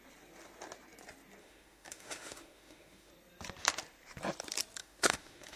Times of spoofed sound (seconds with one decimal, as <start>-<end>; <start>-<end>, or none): 1.4-3.1; 4.8-5.6